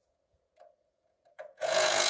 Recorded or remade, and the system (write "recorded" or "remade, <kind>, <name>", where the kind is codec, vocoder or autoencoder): remade, vocoder, Vocos